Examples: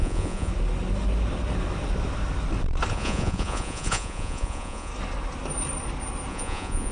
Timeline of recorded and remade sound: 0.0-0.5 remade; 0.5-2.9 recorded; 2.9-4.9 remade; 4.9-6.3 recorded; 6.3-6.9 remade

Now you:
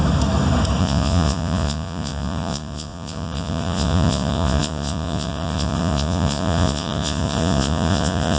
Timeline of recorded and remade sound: 0.0-0.8 recorded; 0.8-8.4 remade

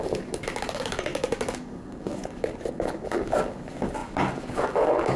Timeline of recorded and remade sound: 0.0-5.2 remade

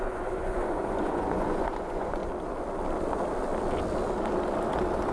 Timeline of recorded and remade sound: 0.0-2.2 remade; 2.2-5.1 recorded

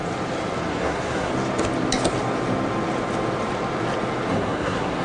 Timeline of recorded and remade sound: 0.0-0.7 recorded; 0.7-1.3 remade; 1.3-4.3 recorded; 4.3-5.0 remade